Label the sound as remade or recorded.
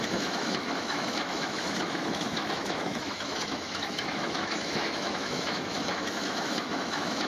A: remade